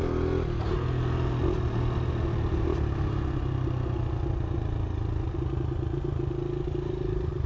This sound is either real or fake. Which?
real